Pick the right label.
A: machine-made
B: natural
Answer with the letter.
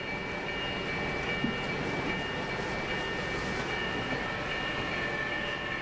B